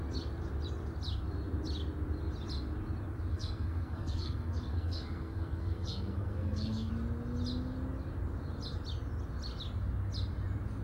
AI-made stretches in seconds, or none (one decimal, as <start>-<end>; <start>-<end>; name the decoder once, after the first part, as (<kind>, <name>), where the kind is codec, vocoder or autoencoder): 3.3-6.9 (codec, SNAC)